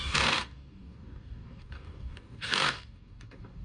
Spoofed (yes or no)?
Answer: yes